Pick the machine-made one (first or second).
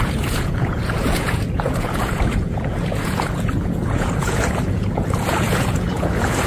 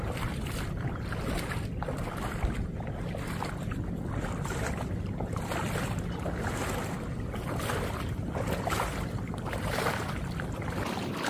first